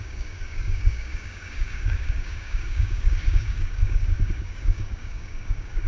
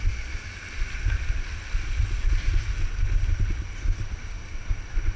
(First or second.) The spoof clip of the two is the first